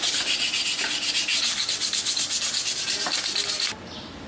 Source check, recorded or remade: recorded